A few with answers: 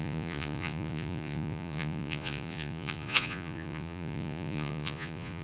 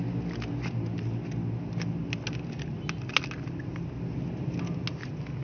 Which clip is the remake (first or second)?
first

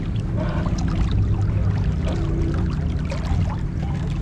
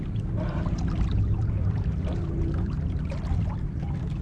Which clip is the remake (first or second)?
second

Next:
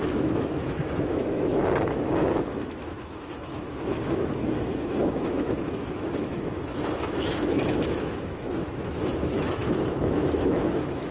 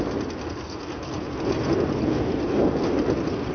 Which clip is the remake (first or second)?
first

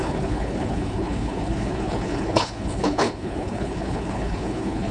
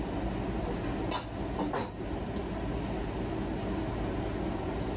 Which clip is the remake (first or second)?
first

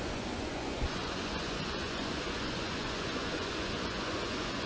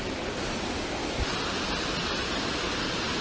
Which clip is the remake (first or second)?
first